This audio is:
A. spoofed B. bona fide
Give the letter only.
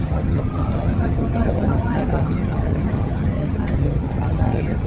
A